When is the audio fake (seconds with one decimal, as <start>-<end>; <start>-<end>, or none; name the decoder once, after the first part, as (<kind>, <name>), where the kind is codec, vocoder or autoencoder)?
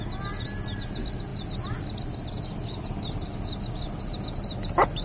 none